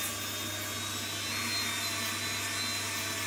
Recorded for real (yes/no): yes